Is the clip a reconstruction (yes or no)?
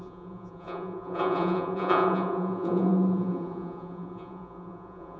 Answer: yes